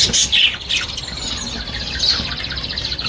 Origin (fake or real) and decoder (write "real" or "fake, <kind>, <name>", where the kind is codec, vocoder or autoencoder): real